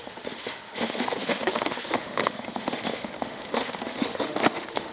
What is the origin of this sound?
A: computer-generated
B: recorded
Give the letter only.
A